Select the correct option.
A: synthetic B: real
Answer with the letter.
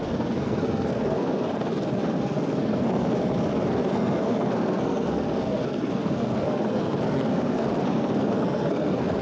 A